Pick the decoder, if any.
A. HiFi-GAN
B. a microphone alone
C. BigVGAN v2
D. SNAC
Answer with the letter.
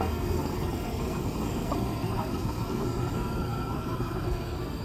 D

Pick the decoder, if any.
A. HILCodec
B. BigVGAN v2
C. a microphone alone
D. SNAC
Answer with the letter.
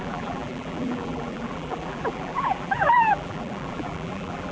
B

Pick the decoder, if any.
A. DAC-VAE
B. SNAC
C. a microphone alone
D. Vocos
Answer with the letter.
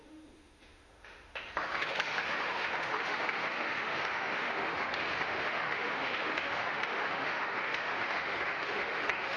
A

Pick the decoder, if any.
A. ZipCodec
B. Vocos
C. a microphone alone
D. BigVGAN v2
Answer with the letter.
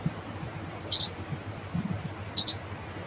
D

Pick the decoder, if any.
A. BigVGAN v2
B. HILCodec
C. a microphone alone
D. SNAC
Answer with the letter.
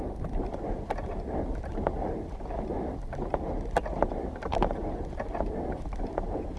C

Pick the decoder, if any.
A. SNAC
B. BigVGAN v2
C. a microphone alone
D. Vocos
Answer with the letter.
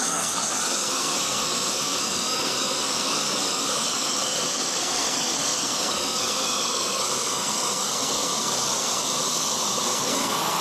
A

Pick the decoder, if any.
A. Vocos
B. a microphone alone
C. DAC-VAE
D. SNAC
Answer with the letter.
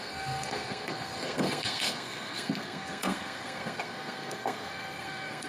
D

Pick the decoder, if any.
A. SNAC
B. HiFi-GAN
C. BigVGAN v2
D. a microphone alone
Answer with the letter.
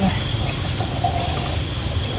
D